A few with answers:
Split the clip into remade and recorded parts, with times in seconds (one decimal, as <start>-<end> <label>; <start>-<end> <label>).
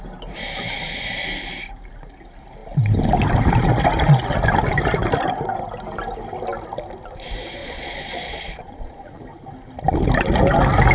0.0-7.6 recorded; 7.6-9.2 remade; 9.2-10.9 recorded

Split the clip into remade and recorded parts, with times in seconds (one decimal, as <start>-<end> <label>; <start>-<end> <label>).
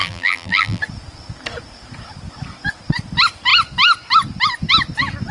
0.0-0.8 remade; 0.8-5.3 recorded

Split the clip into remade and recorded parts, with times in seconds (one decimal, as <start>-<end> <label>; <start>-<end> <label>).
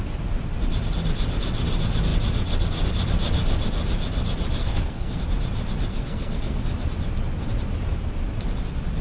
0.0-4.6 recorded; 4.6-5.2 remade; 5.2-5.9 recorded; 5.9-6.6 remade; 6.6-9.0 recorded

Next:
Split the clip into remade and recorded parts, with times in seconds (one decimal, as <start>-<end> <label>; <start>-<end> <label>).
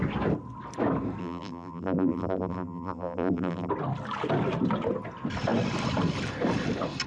0.0-1.2 recorded; 1.2-3.7 remade; 3.7-7.1 recorded